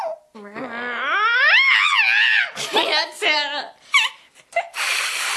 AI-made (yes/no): no